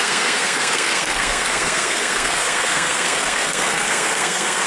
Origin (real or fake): fake